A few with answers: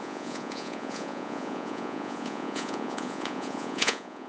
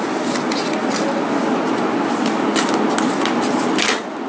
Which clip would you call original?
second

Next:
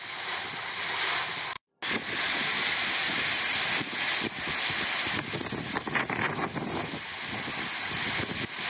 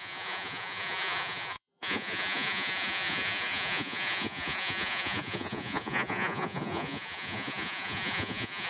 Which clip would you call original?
first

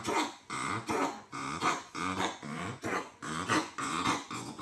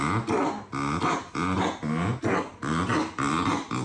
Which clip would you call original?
second